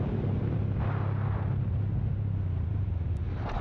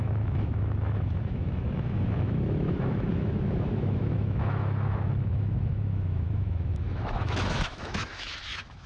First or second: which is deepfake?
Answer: second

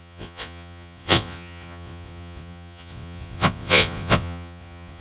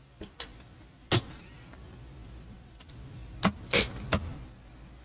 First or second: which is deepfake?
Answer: first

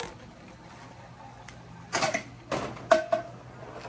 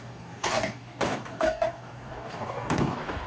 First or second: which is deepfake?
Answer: second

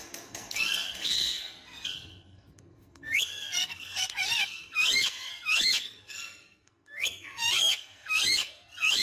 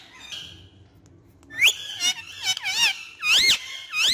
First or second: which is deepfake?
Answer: first